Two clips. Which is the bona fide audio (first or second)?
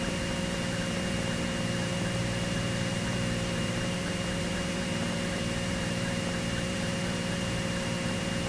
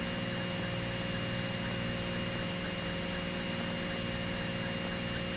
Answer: second